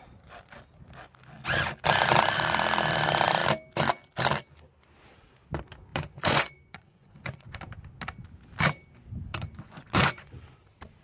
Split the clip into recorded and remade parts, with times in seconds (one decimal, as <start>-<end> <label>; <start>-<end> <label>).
0.0-5.9 recorded; 5.9-7.6 remade; 7.6-9.3 recorded; 9.3-10.3 remade; 10.3-11.0 recorded